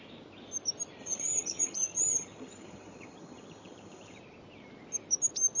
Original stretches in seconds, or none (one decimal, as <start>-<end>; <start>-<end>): 0.0-1.0; 4.2-5.6

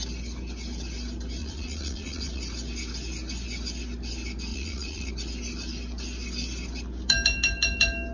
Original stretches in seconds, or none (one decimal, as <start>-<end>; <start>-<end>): 0.0-1.4; 2.4-4.5; 5.1-8.1

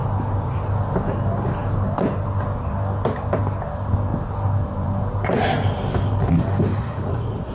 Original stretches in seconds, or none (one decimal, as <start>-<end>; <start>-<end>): 0.0-6.7

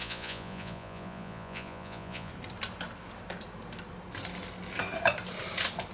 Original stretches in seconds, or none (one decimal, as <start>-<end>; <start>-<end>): 2.3-5.9

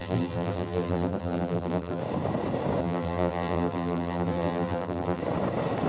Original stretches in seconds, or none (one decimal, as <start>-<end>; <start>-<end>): 2.0-2.8; 5.2-5.9